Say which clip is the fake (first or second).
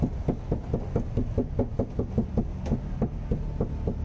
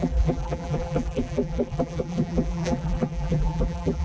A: second